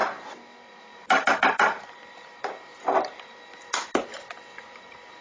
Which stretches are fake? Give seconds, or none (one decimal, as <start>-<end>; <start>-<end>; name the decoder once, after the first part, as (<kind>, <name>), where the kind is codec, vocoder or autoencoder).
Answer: 0.9-3.5 (vocoder, BigVGAN v2); 4.6-5.2